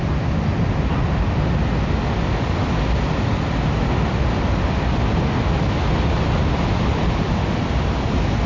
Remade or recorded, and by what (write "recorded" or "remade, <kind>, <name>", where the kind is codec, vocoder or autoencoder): recorded